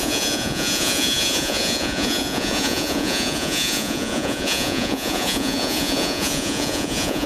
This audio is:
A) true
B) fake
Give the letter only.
B